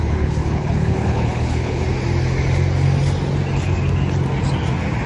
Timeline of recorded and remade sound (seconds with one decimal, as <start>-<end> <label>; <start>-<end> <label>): 0.0-1.8 remade; 1.8-5.1 recorded